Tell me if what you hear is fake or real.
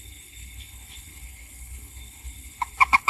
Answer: fake